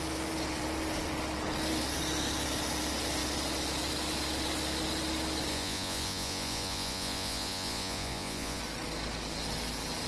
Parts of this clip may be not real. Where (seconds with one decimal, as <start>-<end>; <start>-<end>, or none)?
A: 5.5-8.6